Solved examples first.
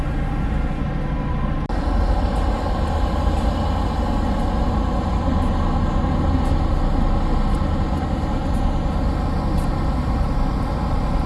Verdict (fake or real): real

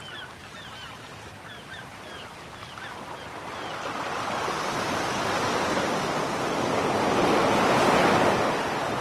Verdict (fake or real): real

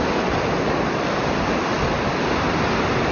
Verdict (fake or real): real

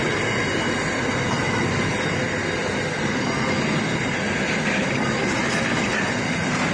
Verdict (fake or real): real